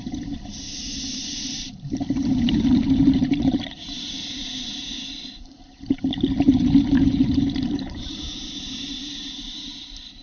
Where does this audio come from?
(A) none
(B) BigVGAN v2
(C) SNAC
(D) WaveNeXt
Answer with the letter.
B